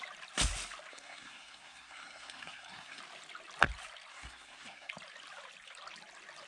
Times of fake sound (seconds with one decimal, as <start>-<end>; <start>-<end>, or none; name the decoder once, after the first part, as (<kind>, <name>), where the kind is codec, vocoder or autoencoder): 0.9-3.0 (codec, SNAC); 4.1-4.9